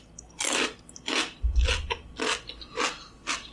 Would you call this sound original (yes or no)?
yes